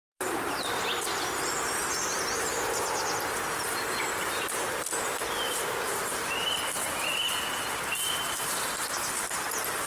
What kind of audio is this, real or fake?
fake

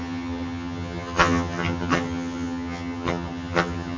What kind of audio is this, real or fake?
fake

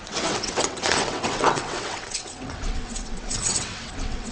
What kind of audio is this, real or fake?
fake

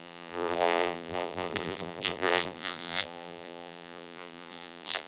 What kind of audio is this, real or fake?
fake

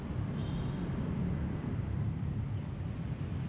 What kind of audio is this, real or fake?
fake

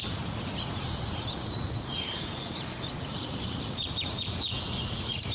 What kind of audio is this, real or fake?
fake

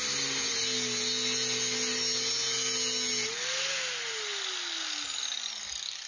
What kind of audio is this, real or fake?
real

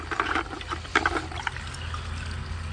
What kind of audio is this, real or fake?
real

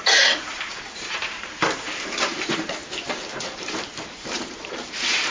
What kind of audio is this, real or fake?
fake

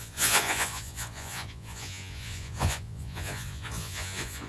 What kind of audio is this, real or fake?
fake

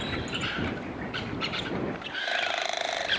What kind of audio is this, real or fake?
fake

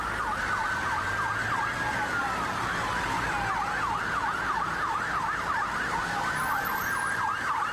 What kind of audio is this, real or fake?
real